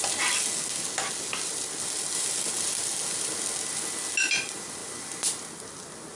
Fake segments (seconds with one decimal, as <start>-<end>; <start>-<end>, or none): none